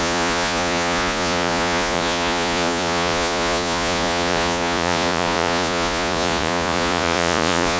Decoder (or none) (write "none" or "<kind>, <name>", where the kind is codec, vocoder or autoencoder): vocoder, Vocos